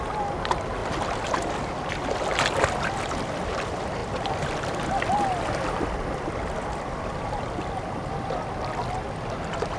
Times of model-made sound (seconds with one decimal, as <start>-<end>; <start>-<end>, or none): 0.8-1.7

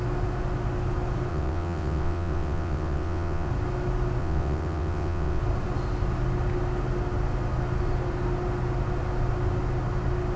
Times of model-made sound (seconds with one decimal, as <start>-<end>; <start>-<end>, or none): 1.3-3.5; 4.2-5.4

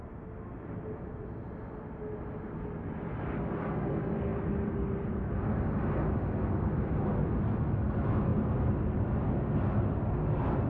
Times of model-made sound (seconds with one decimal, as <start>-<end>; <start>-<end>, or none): 4.3-5.1

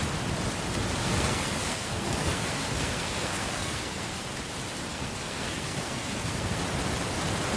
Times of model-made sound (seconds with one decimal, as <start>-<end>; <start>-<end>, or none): 1.0-4.3; 4.9-6.6